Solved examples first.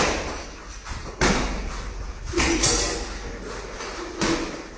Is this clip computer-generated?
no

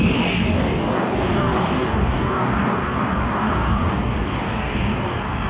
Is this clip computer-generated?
yes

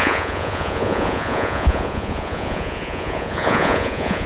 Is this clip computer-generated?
yes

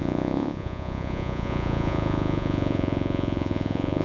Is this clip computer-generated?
yes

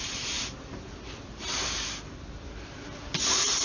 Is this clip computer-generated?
no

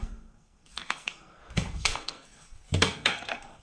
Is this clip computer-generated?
yes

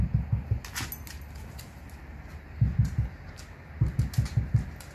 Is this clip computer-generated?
no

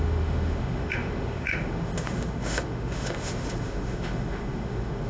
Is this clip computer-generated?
yes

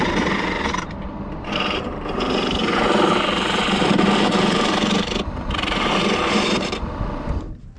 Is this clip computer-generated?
yes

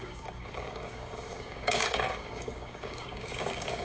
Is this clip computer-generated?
yes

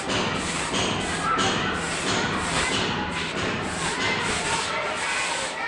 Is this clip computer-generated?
no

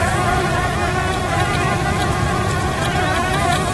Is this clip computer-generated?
no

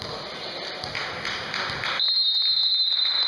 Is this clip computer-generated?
no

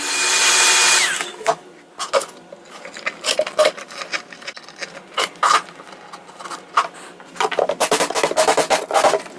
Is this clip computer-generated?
no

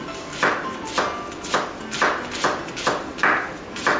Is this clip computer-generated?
no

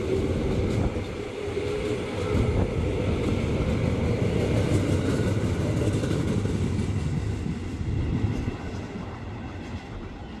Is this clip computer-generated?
no